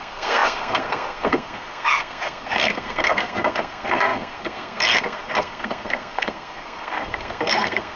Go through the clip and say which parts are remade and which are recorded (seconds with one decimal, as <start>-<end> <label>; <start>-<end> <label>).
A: 0.0-8.0 remade